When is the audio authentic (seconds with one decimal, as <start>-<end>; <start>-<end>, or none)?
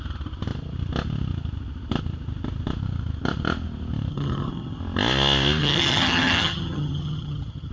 0.0-4.1; 4.8-5.6